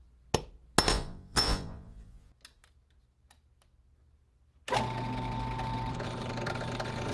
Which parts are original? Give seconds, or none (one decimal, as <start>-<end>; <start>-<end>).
0.0-0.9; 2.3-7.1